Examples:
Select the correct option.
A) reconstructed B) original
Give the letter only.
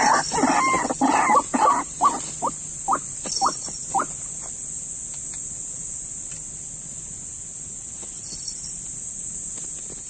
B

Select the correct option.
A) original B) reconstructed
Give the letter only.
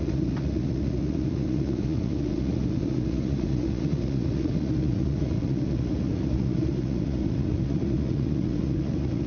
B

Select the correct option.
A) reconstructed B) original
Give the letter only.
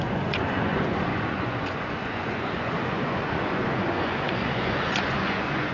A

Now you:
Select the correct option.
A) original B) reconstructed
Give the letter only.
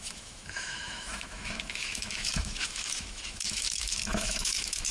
B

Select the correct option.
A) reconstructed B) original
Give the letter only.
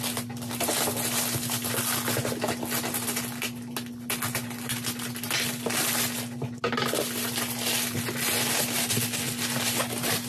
B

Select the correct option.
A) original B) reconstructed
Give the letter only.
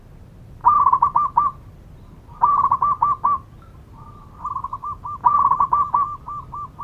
A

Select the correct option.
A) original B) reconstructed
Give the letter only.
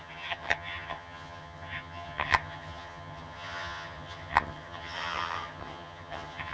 B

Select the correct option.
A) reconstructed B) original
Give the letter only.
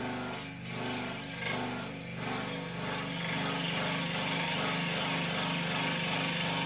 B